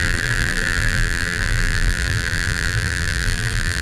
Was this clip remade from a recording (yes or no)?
yes